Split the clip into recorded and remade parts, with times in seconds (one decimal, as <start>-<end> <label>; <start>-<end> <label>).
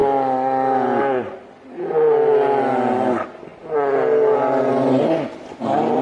0.0-6.0 recorded